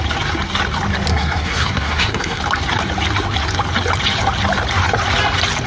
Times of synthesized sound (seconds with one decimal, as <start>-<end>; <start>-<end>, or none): 1.1-2.4